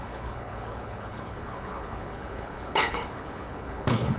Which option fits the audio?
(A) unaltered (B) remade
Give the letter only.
B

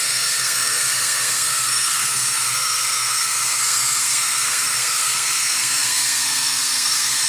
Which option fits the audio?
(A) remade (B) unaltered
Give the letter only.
A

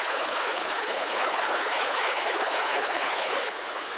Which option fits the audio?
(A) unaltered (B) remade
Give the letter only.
B